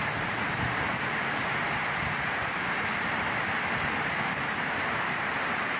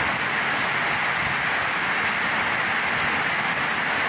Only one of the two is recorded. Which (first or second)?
second